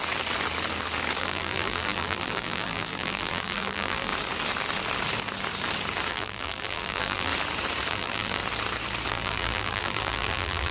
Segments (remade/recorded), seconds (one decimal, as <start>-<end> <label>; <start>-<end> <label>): 0.0-1.2 recorded; 1.2-4.1 remade; 4.1-6.1 recorded; 6.1-7.3 remade; 7.3-7.9 recorded; 7.9-8.4 remade; 8.4-9.1 recorded; 9.1-10.7 remade